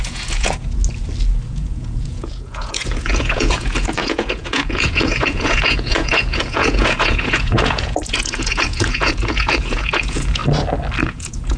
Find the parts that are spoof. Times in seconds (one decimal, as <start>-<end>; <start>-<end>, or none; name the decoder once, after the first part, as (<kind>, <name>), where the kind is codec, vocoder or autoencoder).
0.0-0.8 (vocoder, Vocos); 1.5-10.4; 11.0-11.6